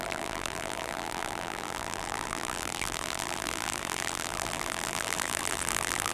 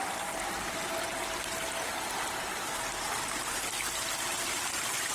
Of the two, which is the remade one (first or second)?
first